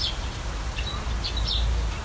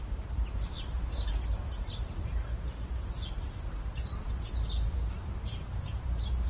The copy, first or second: second